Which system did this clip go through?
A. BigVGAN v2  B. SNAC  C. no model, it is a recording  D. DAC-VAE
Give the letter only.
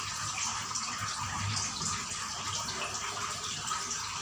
C